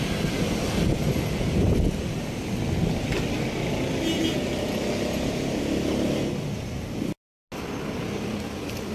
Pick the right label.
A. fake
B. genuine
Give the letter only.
B